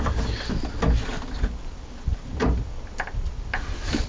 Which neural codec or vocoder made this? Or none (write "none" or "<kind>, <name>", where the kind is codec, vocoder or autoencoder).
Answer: none